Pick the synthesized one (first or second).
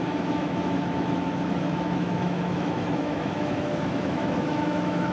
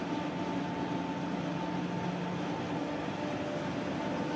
first